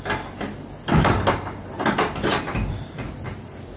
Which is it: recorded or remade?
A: recorded